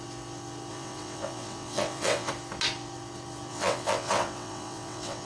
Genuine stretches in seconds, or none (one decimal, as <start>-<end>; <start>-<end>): 0.0-0.7; 2.3-3.5